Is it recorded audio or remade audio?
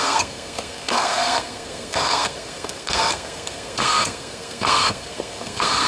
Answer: remade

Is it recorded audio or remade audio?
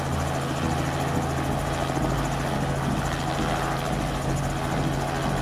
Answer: recorded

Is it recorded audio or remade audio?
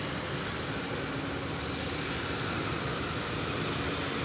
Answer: recorded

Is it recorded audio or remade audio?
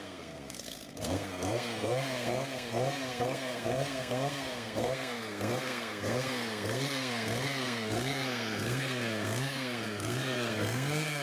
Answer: remade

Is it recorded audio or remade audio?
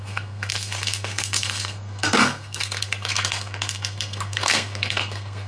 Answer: remade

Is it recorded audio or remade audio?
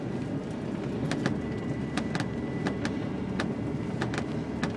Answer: recorded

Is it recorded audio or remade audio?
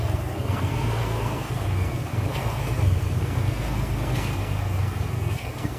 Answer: remade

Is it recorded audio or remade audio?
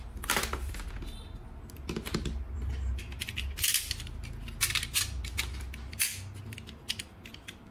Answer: recorded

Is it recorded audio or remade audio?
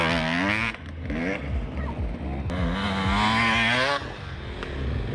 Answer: recorded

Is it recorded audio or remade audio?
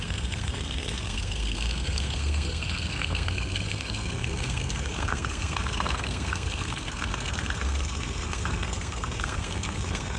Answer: remade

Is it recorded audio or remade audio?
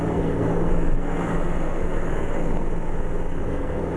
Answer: remade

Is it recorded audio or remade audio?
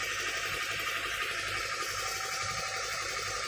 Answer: recorded